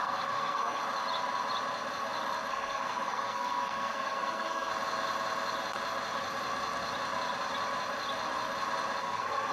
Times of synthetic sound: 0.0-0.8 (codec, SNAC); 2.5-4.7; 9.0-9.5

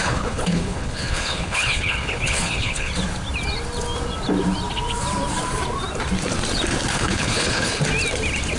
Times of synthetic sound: 0.0-2.9 (codec, HILCodec); 6.9-7.8

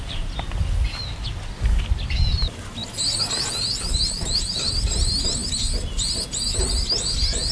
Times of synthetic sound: none

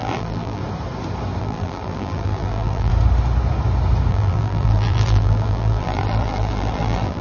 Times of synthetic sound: 0.0-0.6 (vocoder, BigVGAN v2); 1.4-2.9; 4.1-7.2